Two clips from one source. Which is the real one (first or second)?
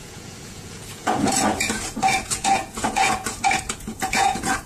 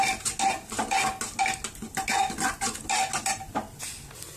second